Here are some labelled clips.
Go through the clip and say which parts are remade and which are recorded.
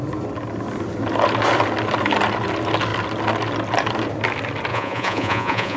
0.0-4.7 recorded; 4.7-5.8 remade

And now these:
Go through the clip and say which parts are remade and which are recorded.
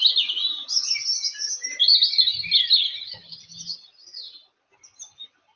0.0-5.6 recorded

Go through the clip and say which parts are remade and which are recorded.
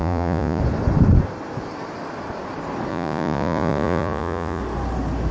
0.0-0.6 remade; 0.6-2.9 recorded; 2.9-4.6 remade; 4.6-5.3 recorded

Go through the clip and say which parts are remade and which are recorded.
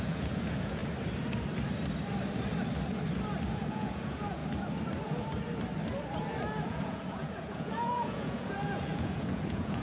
0.0-0.8 remade; 0.8-3.7 recorded; 3.7-4.4 remade; 4.4-6.7 recorded; 6.7-9.8 remade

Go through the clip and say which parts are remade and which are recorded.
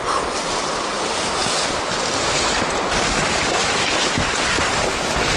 0.0-5.4 recorded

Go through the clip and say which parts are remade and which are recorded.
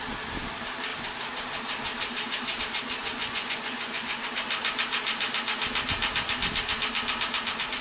0.0-3.0 recorded; 3.0-4.3 remade; 4.3-7.8 recorded